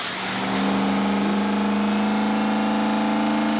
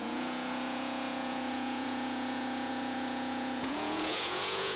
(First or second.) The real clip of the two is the first